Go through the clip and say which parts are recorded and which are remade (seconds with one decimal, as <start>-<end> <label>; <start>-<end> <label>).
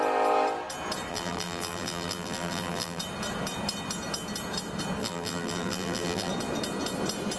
0.0-1.1 recorded; 1.1-3.0 remade; 3.0-5.0 recorded; 5.0-6.3 remade; 6.3-7.4 recorded